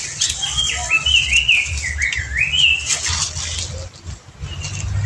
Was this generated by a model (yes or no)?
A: no